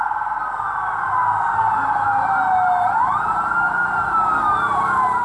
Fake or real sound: real